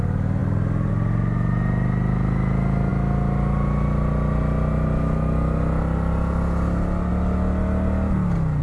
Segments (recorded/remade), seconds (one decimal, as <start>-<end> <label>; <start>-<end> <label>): 0.0-8.6 recorded